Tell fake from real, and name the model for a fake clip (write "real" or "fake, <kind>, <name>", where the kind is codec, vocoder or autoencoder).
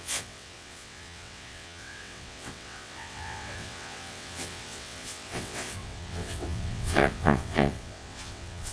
fake, vocoder, WaveNeXt